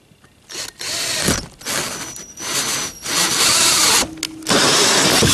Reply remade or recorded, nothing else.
recorded